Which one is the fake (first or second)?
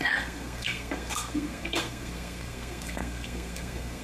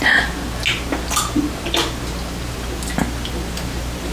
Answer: first